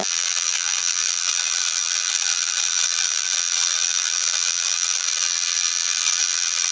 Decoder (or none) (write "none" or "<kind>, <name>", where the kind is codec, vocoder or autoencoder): vocoder, BigVGAN v2